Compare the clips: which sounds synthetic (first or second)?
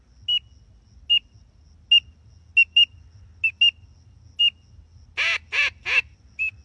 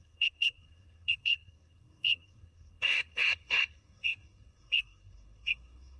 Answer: second